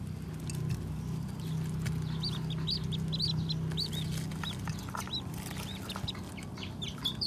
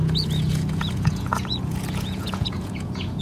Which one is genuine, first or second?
first